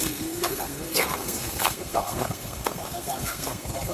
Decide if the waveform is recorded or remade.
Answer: remade